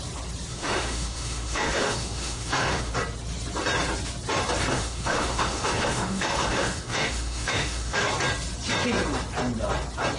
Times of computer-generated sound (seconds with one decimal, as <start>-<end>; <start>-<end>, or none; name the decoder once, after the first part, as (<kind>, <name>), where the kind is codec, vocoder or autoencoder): 0.5-2.9 (autoencoder, DAC-VAE); 4.7-8.1